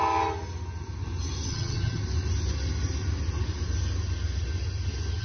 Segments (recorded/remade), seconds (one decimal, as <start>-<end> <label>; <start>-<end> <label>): 0.0-1.5 recorded; 1.5-2.0 remade; 2.0-5.2 recorded